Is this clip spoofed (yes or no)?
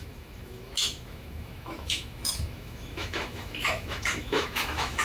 yes